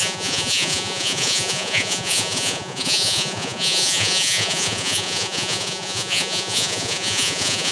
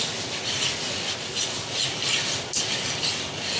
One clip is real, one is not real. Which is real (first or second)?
second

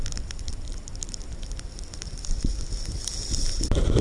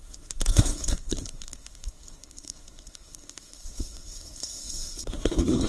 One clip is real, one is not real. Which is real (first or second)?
first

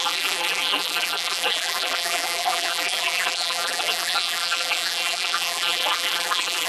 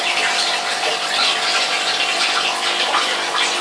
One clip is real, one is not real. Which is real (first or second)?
second